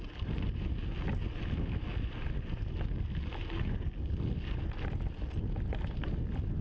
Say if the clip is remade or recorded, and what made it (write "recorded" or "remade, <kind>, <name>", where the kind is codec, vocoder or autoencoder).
recorded